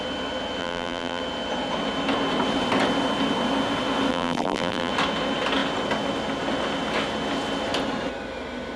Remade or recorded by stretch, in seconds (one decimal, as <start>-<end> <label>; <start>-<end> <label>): 0.0-0.6 recorded; 0.6-1.2 remade; 1.2-4.1 recorded; 4.1-4.9 remade; 4.9-8.8 recorded